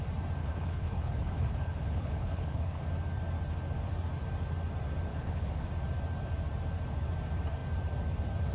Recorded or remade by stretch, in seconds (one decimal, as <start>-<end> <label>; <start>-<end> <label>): 0.0-0.4 recorded; 0.4-2.8 remade; 2.8-5.1 recorded; 5.1-5.7 remade; 5.7-8.5 recorded